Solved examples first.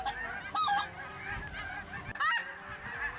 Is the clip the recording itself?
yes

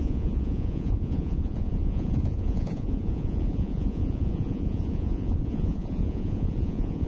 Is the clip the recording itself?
no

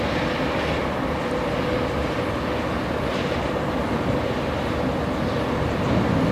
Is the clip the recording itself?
yes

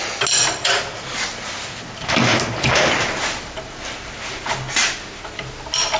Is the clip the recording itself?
yes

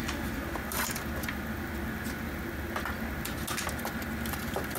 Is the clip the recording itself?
yes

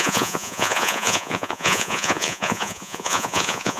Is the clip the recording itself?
no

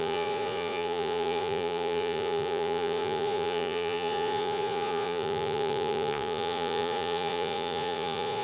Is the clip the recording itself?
no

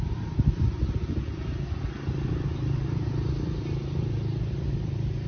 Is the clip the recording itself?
yes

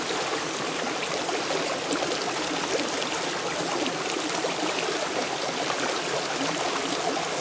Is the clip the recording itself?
yes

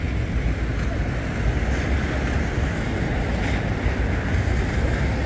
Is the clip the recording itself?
yes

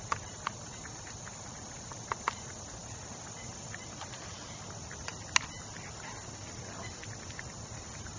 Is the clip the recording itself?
yes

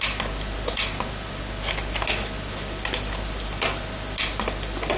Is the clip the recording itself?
yes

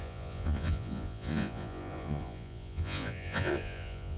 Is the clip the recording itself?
no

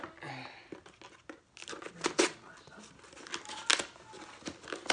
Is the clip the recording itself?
yes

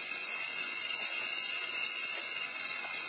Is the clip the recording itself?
no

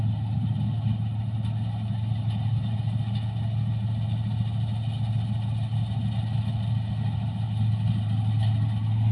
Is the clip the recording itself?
yes